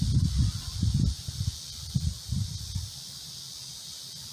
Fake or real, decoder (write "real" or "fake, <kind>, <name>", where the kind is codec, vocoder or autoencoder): real